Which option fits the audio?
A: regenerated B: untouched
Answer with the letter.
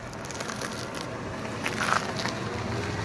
B